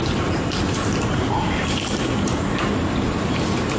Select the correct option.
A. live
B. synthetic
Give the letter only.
B